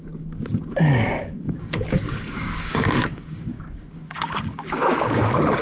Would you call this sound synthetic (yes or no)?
yes